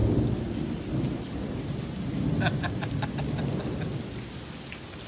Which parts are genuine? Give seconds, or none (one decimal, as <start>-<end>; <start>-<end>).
0.0-5.1

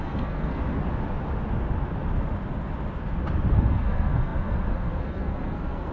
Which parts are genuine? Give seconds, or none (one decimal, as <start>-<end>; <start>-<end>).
0.6-3.5